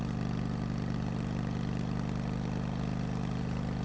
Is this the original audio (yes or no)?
yes